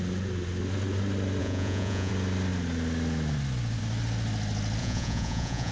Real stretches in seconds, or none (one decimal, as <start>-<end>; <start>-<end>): 0.0-1.4; 2.1-4.8